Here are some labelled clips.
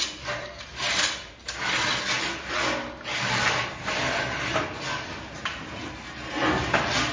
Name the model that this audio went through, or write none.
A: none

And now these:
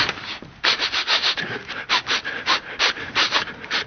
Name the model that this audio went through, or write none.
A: vocoder, BigVGAN v2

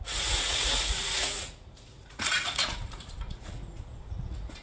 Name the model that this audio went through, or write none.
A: vocoder, Vocos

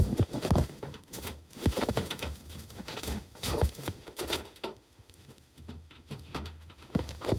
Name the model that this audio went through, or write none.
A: autoencoder, DAC-VAE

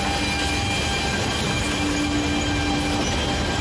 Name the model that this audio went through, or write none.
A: none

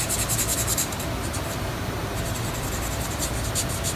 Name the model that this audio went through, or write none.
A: none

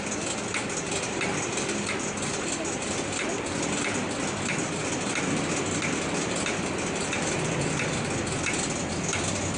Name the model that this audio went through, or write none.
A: none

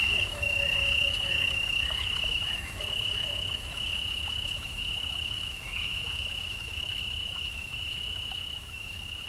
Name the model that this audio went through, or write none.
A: autoencoder, DAC-VAE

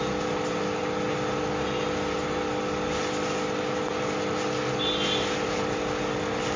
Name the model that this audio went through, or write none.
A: none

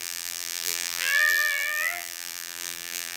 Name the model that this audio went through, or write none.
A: vocoder, BigVGAN v2